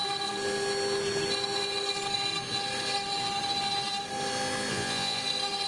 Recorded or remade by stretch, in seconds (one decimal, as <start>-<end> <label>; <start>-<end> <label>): 0.0-4.7 recorded; 4.7-5.2 remade; 5.2-5.7 recorded